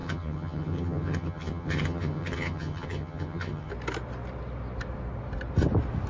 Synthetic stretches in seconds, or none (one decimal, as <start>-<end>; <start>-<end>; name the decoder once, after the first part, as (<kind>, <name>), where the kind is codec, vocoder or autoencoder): 0.0-3.7 (vocoder, HiFi-GAN)